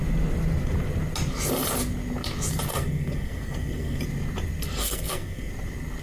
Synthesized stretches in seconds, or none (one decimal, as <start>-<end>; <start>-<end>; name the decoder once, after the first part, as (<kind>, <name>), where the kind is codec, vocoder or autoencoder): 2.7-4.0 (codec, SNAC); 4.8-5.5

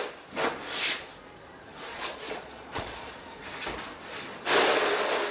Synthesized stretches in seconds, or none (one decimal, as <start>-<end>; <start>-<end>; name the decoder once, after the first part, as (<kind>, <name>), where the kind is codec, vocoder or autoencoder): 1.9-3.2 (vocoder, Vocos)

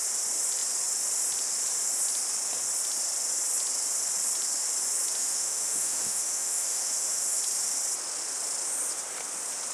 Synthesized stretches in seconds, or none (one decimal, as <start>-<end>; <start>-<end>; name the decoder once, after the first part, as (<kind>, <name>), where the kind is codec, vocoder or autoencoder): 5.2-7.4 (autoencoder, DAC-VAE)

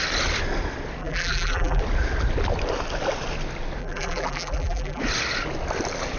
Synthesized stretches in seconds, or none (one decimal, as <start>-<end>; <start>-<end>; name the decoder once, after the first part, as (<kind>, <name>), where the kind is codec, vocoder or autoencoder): 1.0-1.8 (vocoder, BigVGAN v2); 3.8-5.0

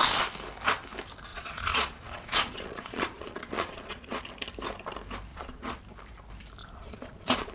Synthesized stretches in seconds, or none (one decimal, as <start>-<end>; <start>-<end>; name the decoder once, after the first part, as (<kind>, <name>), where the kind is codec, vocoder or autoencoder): 1.3-4.2 (vocoder, Vocos); 5.3-5.8; 6.6-7.5

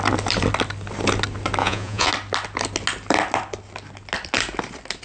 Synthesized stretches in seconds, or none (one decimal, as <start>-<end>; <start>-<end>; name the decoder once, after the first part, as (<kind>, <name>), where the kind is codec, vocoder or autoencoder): 1.6-2.1 (vocoder, Vocos)

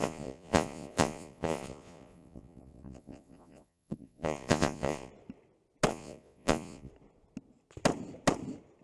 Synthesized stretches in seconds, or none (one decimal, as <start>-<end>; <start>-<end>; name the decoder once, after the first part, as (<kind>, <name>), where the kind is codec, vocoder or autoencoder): 0.0-5.1 (vocoder, Vocos); 5.9-6.9